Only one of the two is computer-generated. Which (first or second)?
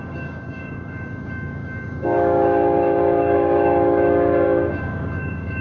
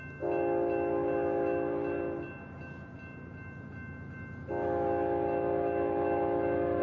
first